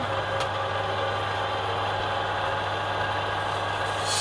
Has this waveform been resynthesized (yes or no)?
no